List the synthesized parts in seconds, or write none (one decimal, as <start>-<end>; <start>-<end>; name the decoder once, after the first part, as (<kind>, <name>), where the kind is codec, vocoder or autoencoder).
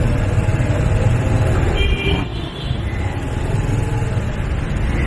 none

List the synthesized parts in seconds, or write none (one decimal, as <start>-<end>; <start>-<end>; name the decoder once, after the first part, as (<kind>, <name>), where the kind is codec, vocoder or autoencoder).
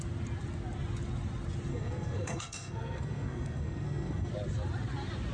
1.7-4.3 (codec, SNAC)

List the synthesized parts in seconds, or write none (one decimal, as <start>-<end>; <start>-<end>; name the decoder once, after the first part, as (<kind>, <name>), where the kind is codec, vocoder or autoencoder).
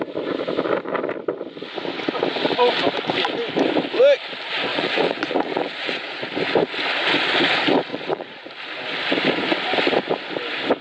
4.7-6.2 (vocoder, Vocos); 7.9-8.5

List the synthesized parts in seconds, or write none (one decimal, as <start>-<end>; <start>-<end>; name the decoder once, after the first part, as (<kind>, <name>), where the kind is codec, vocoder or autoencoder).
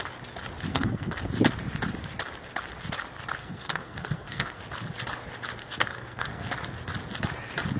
0.7-1.3 (codec, SNAC); 3.4-4.6; 5.6-6.5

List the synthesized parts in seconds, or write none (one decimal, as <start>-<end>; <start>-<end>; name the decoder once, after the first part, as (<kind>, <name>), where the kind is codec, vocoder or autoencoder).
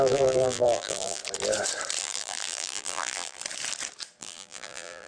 0.0-1.2 (vocoder, BigVGAN v2); 2.0-3.4; 4.2-5.1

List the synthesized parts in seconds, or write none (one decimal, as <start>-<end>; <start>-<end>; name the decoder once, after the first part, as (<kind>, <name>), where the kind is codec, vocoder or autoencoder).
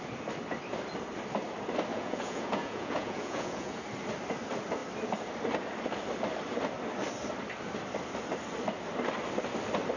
1.9-3.8 (vocoder, Vocos)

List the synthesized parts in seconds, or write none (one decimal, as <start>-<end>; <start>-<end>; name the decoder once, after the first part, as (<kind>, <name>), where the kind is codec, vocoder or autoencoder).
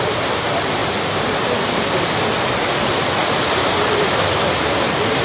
0.0-0.8 (vocoder, BigVGAN v2); 3.9-5.2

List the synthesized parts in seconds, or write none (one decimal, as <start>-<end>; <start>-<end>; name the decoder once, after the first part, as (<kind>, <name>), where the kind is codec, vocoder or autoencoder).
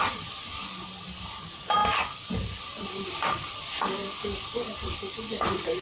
0.6-1.1 (vocoder, BigVGAN v2); 1.8-2.8; 4.0-5.8